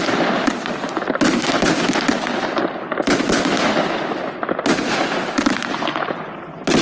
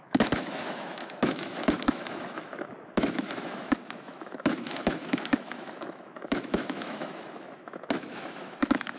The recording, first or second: first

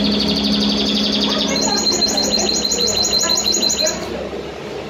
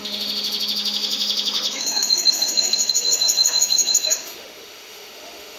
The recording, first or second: first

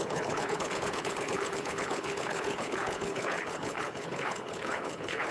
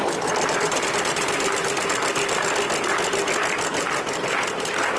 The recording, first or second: second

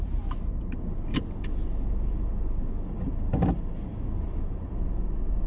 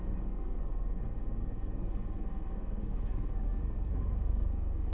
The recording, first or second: first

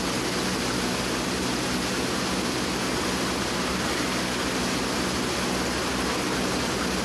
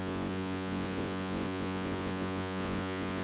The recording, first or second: first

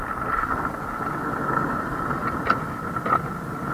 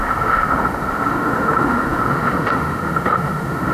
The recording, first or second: first